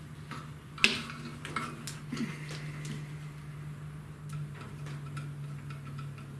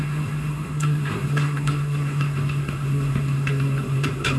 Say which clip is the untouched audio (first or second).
first